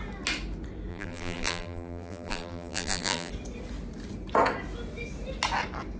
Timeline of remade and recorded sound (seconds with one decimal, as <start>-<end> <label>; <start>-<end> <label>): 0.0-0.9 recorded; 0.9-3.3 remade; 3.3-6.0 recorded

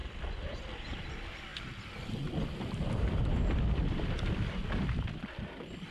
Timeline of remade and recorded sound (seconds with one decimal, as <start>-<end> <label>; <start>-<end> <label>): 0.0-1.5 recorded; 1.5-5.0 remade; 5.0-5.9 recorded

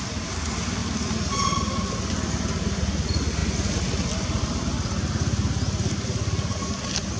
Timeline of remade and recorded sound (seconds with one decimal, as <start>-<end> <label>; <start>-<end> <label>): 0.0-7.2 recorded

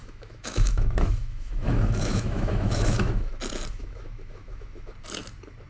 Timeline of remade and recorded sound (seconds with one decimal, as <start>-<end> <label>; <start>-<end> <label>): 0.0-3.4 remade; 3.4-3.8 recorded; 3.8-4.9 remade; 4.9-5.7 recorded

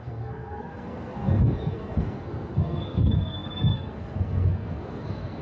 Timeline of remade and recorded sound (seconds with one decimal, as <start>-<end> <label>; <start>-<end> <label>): 0.0-5.4 remade